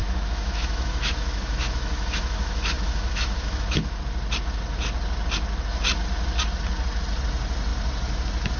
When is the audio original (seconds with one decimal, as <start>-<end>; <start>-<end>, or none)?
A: 4.0-8.6